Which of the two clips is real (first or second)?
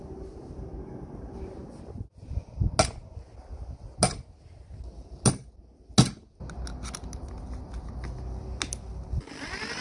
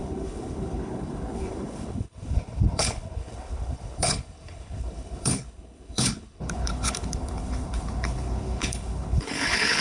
first